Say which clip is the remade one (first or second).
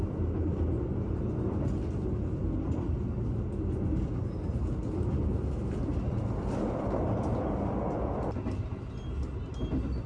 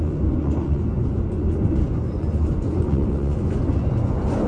second